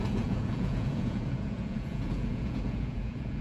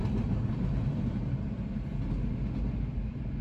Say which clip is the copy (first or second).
first